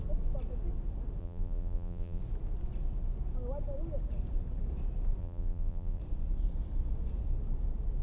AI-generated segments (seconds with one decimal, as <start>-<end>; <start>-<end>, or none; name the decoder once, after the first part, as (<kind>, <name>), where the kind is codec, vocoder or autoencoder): 1.2-2.2 (vocoder, BigVGAN v2); 5.2-6.0